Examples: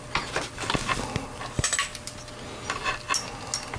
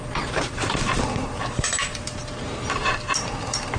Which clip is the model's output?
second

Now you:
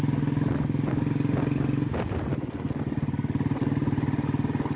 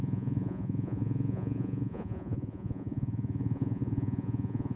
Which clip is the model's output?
second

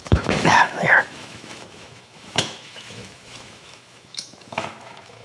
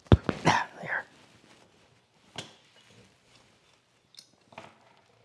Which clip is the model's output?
first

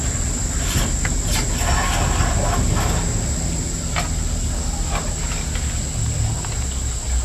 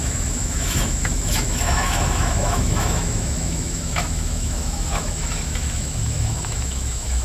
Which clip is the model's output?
second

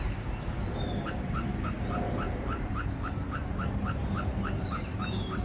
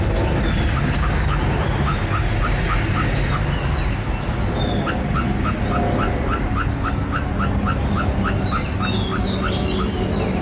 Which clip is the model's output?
first